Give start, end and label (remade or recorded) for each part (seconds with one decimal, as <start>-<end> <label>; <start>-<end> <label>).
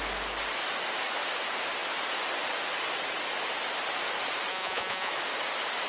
0.0-4.5 recorded; 4.5-5.1 remade; 5.1-5.9 recorded